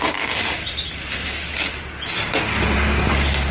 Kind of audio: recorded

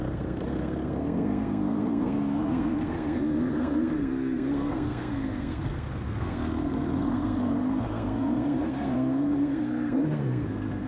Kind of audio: remade